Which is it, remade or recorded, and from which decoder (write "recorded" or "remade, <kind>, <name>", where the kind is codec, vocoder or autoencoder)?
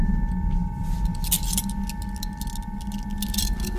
recorded